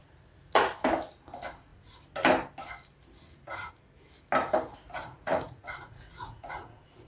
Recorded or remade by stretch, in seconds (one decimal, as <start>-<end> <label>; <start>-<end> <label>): 0.0-0.7 remade; 0.7-5.0 recorded; 5.0-7.1 remade

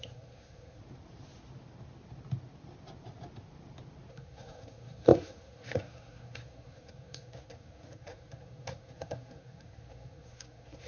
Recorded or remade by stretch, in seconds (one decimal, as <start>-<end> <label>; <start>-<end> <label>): 0.0-0.8 remade; 0.8-4.1 recorded; 4.1-10.9 remade

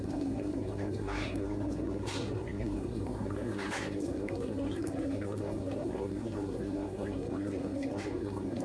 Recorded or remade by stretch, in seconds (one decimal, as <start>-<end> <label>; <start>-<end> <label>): 0.0-8.6 remade

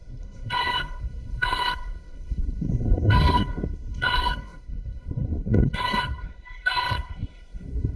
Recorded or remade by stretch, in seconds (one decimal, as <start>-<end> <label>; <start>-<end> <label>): 0.0-8.0 remade

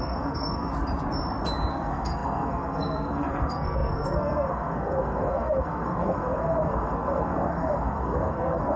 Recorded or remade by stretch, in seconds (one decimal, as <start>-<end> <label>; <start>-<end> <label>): 0.0-0.7 remade; 0.7-1.7 recorded; 1.7-8.8 remade

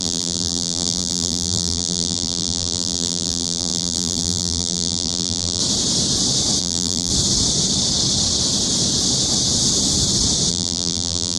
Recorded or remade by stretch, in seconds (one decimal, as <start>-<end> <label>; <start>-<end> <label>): 0.0-5.6 remade; 5.6-6.6 recorded; 6.6-7.1 remade; 7.1-10.5 recorded; 10.5-11.4 remade

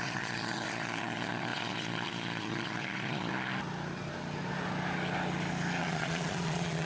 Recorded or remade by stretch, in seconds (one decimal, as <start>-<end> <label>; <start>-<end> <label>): 0.0-3.3 remade; 3.3-5.8 recorded; 5.8-6.9 remade